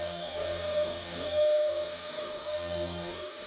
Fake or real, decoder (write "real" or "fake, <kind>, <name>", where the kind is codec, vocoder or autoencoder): fake, codec, DAC